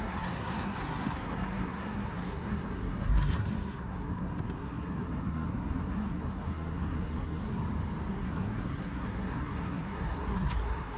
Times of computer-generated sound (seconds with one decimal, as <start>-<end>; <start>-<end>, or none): 0.0-7.6; 8.1-11.0